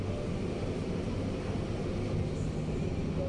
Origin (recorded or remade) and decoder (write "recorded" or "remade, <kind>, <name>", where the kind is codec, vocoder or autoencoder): recorded